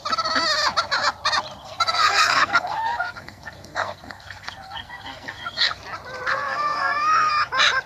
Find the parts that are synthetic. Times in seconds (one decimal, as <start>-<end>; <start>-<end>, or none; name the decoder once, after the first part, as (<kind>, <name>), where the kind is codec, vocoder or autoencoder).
1.6-5.8 (codec, SNAC); 6.3-7.3